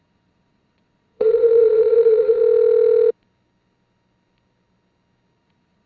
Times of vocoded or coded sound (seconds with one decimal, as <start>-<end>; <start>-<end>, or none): 0.0-2.4; 5.4-5.9